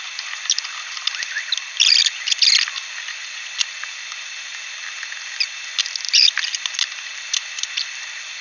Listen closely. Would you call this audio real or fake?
real